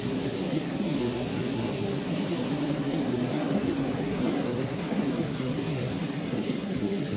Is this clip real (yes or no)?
no